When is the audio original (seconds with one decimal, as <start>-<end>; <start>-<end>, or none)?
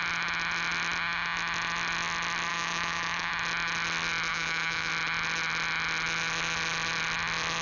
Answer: 0.0-2.5; 3.3-4.3; 4.9-7.6